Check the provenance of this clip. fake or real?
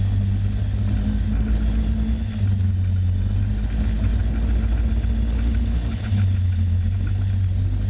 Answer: real